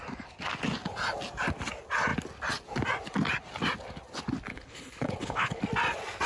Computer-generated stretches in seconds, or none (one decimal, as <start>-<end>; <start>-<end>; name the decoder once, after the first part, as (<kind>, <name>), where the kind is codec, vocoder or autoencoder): 4.5-5.6 (codec, HILCodec)